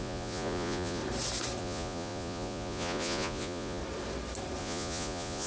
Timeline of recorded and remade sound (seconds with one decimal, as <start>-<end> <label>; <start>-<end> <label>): 0.0-1.0 remade; 1.0-1.6 recorded; 1.6-3.8 remade; 3.8-4.6 recorded; 4.6-5.5 remade